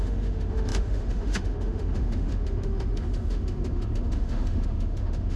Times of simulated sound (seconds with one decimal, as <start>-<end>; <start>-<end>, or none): 0.0-5.4